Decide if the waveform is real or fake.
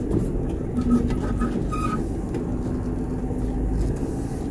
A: real